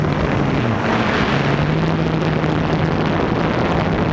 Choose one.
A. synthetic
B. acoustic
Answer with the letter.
B